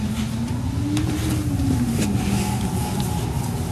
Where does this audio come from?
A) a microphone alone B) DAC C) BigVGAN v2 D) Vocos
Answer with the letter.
A